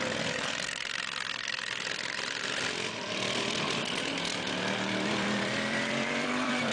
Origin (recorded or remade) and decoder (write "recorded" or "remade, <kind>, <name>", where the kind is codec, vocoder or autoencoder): remade, vocoder, BigVGAN v2